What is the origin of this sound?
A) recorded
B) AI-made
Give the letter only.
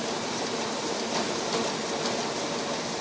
A